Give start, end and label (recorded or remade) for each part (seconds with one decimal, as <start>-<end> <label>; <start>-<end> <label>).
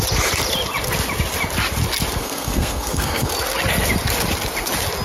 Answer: 0.0-2.2 recorded; 2.2-3.3 remade; 3.3-5.0 recorded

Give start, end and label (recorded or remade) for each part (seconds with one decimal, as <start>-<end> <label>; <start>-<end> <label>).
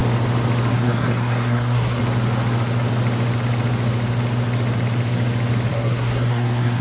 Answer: 0.0-0.7 recorded; 0.7-2.0 remade; 2.0-5.7 recorded; 5.7-6.8 remade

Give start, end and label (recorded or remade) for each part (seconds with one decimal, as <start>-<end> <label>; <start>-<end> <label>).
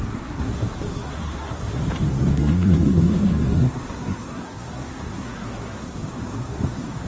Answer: 0.0-1.8 remade; 1.8-2.3 recorded; 2.3-7.1 remade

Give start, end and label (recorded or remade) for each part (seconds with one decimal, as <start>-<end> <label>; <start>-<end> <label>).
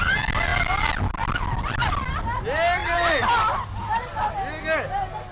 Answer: 0.0-5.3 recorded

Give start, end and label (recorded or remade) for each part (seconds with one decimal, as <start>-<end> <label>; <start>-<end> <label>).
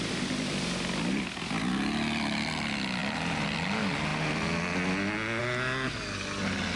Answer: 0.0-6.8 recorded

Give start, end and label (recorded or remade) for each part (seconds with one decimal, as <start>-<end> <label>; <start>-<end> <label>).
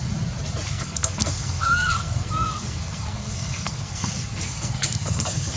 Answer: 0.0-0.7 recorded; 0.7-5.6 remade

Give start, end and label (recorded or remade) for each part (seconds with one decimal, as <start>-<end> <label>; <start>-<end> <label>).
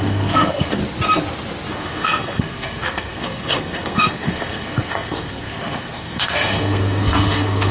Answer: 0.0-0.8 remade; 0.8-1.7 recorded; 1.7-7.7 remade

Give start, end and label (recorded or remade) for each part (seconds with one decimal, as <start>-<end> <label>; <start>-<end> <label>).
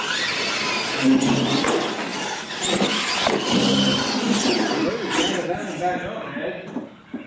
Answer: 0.0-7.3 recorded